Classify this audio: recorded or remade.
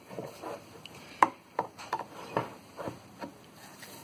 remade